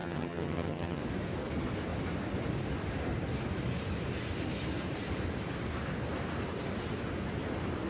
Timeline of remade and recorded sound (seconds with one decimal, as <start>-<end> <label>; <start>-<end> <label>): 0.0-1.0 remade; 1.0-7.9 recorded